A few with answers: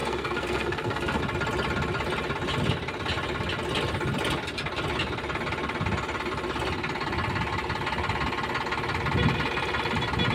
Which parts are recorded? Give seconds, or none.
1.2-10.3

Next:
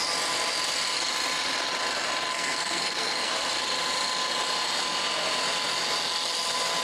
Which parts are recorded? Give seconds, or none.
0.0-2.3; 3.3-6.8

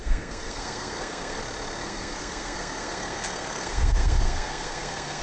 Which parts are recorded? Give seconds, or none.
1.4-1.8